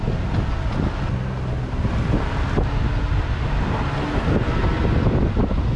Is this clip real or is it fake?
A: real